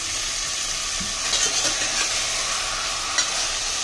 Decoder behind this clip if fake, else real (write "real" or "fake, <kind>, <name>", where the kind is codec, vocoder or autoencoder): real